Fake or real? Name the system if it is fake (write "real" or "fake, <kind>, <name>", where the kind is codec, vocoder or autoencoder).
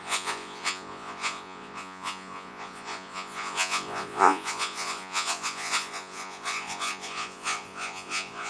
fake, vocoder, Vocos